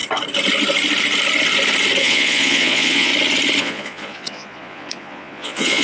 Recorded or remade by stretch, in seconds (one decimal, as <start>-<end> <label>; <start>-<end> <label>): 0.0-2.0 recorded; 2.0-3.1 remade; 3.1-3.6 recorded; 3.6-5.8 remade